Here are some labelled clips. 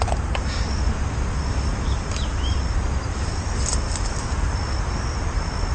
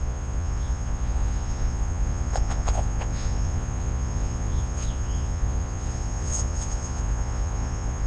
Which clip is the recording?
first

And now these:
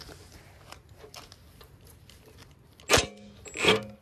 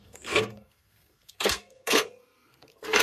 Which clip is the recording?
first